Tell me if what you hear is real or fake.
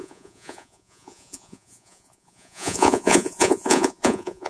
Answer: fake